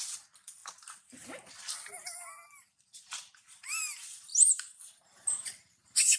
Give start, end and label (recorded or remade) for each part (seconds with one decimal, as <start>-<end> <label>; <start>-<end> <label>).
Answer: 0.0-0.6 remade; 0.6-1.9 recorded; 1.9-6.2 remade